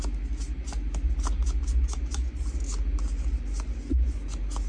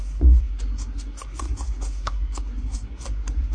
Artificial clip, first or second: second